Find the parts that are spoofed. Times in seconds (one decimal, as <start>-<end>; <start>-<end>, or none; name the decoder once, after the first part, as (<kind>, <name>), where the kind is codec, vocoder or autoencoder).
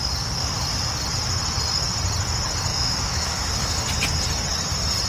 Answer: 2.7-3.5 (autoencoder, DAC-VAE)